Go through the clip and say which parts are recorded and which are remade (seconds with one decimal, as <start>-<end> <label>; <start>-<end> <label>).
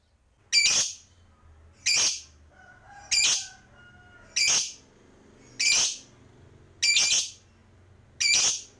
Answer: 0.0-8.8 recorded